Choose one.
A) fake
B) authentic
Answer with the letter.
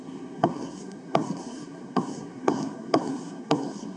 A